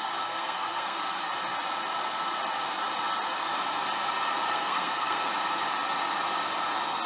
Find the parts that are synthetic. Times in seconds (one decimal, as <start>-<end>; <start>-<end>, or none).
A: 0.0-1.3; 4.5-5.3